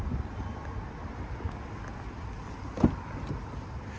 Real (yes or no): yes